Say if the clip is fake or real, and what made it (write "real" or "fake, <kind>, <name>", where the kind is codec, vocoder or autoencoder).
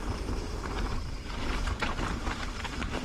fake, vocoder, BigVGAN v2